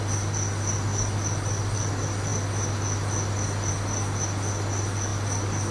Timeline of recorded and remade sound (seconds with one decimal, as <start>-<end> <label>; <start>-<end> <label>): 0.0-5.7 recorded